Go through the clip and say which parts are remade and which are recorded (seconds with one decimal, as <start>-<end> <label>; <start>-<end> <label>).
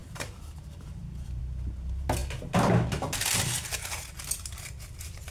0.0-1.4 remade; 1.4-5.3 recorded